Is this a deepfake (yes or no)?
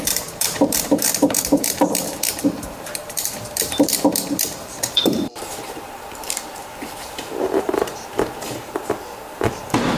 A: yes